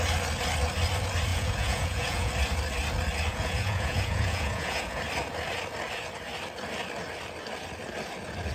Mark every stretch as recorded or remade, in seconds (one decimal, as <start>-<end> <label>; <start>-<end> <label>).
0.0-1.3 recorded; 1.3-2.3 remade; 2.3-3.3 recorded; 3.3-5.0 remade; 5.0-8.5 recorded